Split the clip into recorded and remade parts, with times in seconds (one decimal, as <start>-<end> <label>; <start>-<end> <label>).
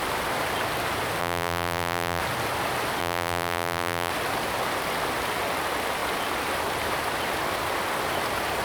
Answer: 0.0-1.2 recorded; 1.2-2.2 remade; 2.2-3.0 recorded; 3.0-4.1 remade; 4.1-8.6 recorded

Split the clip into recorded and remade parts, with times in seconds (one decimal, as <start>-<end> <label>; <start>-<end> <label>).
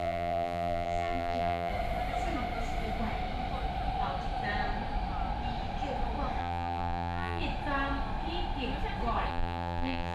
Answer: 0.0-1.7 remade; 1.7-6.4 recorded; 6.4-7.4 remade; 7.4-9.3 recorded; 9.3-10.1 remade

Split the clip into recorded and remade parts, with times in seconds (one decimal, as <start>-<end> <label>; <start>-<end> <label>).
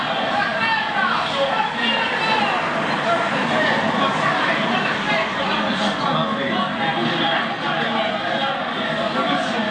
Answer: 0.0-5.8 remade; 5.8-8.4 recorded; 8.4-9.7 remade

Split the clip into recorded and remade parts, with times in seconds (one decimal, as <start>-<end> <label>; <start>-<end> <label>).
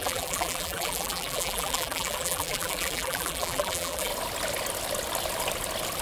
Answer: 0.0-4.1 remade; 4.1-6.0 recorded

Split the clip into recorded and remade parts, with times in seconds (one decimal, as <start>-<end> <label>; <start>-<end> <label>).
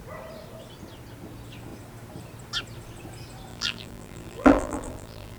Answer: 0.0-3.5 recorded; 3.5-5.4 remade